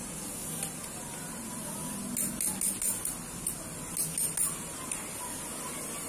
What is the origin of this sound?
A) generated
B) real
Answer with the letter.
B